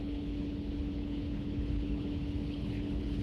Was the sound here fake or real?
fake